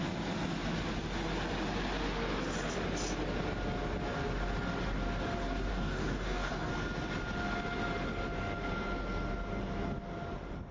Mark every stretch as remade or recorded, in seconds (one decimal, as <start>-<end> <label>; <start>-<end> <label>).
0.0-5.7 recorded; 5.7-6.7 remade; 6.7-10.7 recorded